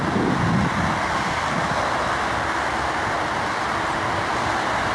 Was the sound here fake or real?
real